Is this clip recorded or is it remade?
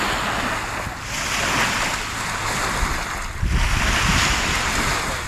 recorded